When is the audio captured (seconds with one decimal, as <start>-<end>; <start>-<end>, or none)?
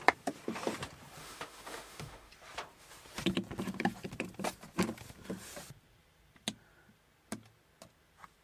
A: 0.0-1.2; 2.3-8.4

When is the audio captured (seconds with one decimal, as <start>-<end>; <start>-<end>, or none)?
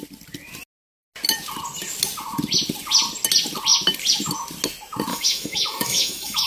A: 0.0-5.1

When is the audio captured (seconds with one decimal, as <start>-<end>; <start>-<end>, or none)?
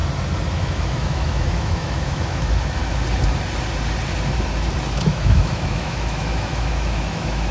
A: 0.0-0.5; 2.8-5.1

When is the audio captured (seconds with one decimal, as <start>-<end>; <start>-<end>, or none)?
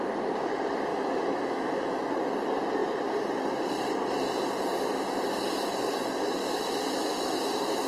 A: 0.0-0.9; 2.0-6.4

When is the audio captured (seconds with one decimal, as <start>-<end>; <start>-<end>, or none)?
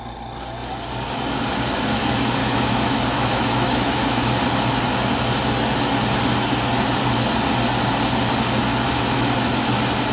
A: 0.0-2.4; 4.3-8.7; 9.7-10.1